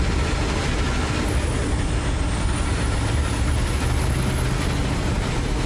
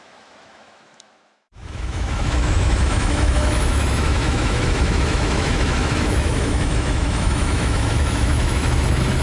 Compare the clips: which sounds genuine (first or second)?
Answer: first